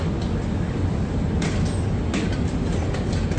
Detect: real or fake real